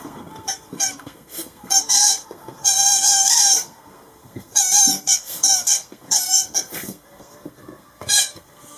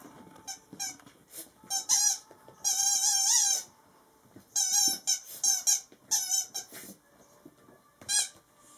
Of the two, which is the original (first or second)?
second